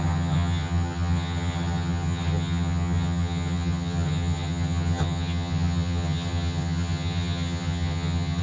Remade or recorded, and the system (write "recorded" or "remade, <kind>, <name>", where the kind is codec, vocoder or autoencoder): remade, vocoder, HiFi-GAN